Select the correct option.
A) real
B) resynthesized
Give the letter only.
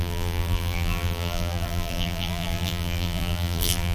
B